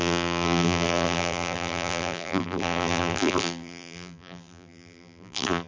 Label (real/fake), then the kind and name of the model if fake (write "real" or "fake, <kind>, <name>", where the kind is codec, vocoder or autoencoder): fake, vocoder, BigVGAN v2